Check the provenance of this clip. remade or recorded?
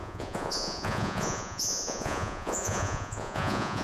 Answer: remade